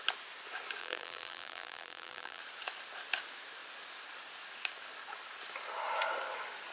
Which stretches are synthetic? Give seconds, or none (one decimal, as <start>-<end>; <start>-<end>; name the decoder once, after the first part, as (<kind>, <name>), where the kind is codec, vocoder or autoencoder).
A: 0.8-2.4 (vocoder, BigVGAN v2)